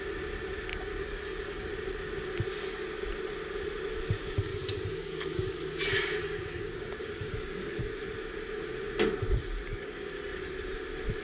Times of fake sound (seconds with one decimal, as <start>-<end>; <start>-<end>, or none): 0.7-1.7; 4.5-5.5; 6.2-7.9; 9.7-10.2